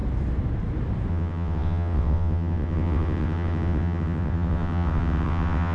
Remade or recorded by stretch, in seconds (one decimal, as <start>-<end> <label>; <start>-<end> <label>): 0.0-1.1 recorded; 1.1-5.7 remade